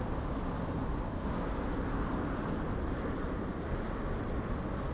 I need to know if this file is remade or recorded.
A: recorded